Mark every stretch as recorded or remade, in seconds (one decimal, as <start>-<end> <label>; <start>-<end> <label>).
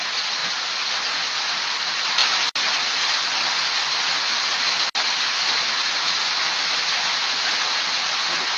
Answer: 0.0-8.6 recorded